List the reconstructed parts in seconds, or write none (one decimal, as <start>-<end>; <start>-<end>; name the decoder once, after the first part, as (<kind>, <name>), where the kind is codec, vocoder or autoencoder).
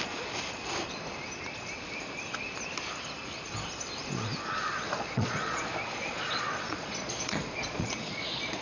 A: 4.7-5.6 (vocoder, Vocos); 6.2-8.6